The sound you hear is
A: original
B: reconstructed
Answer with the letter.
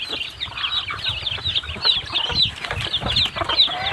A